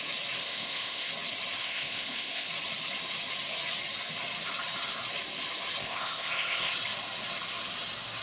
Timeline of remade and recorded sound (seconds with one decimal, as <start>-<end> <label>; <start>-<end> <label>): 0.0-0.4 recorded; 0.4-1.1 remade; 1.1-1.6 recorded; 1.6-2.5 remade; 2.5-5.8 recorded; 5.8-6.7 remade; 6.7-8.2 recorded

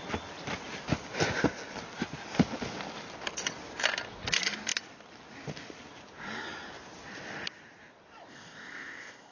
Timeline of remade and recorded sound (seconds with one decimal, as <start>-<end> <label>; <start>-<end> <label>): 0.0-8.3 recorded; 8.3-9.3 remade

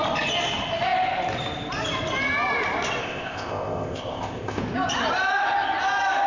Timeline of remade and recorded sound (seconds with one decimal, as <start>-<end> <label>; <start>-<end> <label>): 0.0-3.0 recorded; 3.0-4.6 remade; 4.6-6.3 recorded

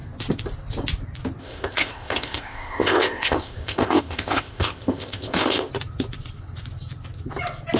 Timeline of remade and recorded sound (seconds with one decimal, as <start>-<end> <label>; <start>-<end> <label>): 0.0-1.4 recorded; 1.4-5.7 remade; 5.7-7.8 recorded

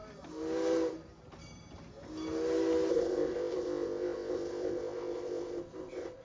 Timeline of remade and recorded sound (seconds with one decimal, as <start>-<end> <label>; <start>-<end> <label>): 0.0-2.9 recorded; 2.9-6.2 remade

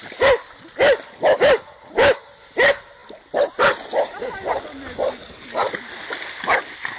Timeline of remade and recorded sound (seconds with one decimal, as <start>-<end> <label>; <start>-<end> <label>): 0.0-7.0 recorded

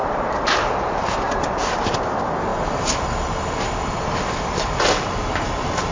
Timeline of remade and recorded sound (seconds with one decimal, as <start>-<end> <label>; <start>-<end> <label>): 0.0-5.9 recorded

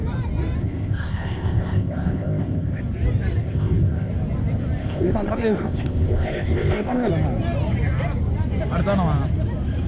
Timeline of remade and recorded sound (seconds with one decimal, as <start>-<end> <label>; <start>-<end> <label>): 0.0-0.6 recorded; 0.6-2.8 remade; 2.8-3.4 recorded; 3.4-4.1 remade; 4.1-4.8 recorded; 4.8-7.1 remade; 7.1-9.9 recorded